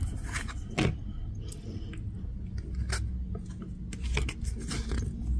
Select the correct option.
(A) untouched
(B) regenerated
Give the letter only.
A